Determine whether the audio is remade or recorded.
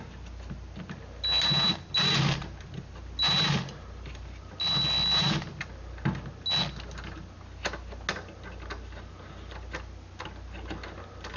recorded